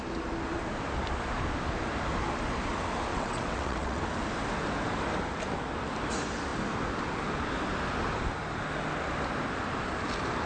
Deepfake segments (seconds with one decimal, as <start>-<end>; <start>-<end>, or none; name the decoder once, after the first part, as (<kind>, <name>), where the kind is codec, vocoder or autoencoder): 3.1-4.0 (vocoder, WaveNeXt)